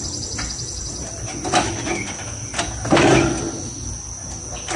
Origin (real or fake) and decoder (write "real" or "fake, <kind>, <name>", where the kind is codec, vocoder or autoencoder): real